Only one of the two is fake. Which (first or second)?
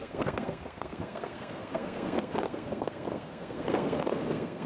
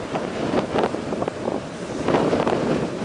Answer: first